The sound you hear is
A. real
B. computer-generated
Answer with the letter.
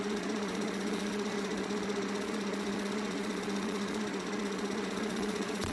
B